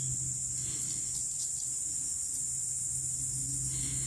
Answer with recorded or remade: recorded